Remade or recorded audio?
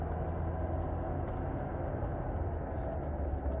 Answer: recorded